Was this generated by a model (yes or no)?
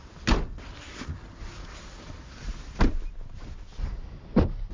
no